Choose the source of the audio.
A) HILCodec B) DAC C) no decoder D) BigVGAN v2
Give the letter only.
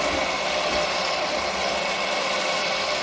C